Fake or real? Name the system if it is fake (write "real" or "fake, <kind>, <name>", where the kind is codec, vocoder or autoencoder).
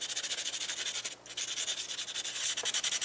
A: real